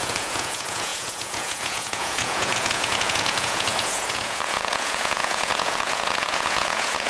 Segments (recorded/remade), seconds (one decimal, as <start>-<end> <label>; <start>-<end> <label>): 0.0-7.1 remade

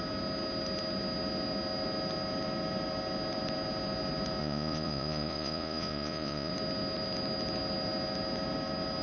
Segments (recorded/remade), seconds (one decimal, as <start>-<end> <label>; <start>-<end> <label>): 0.0-4.4 recorded; 4.4-6.5 remade; 6.5-9.0 recorded

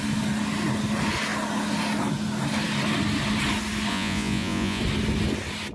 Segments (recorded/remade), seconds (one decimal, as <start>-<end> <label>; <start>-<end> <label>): 0.0-3.9 recorded; 3.9-4.8 remade; 4.8-5.7 recorded

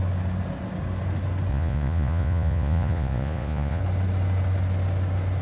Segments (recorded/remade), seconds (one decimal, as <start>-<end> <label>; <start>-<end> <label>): 0.0-1.5 recorded; 1.5-3.8 remade; 3.8-5.4 recorded

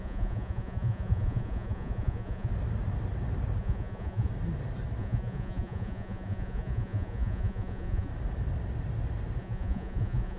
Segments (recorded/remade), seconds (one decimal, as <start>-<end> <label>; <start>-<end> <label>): 0.0-2.5 remade; 2.5-3.6 recorded; 3.6-4.3 remade; 4.3-5.0 recorded; 5.0-8.1 remade; 8.1-9.4 recorded; 9.4-10.4 remade

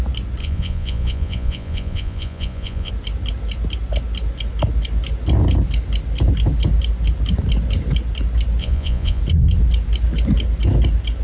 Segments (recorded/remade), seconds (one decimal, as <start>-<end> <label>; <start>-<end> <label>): 0.0-0.4 recorded; 0.4-2.9 remade; 2.9-8.6 recorded; 8.6-9.2 remade; 9.2-11.2 recorded